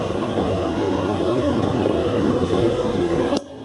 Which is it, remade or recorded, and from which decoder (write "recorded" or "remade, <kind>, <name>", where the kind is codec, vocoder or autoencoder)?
remade, codec, SNAC